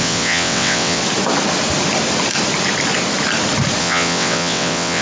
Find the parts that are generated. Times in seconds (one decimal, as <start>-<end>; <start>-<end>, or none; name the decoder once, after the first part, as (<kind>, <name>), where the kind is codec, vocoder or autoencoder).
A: 0.0-1.0 (vocoder, WaveNeXt); 3.8-5.0